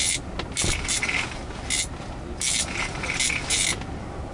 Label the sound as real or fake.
real